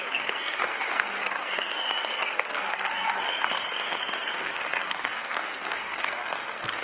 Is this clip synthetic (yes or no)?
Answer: yes